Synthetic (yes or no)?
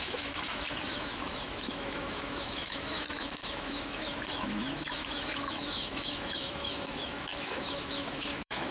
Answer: yes